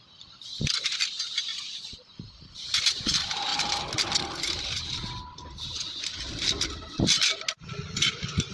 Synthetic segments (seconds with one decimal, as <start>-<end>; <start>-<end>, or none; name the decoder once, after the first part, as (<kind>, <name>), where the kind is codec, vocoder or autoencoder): none